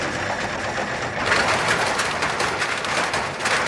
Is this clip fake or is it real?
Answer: real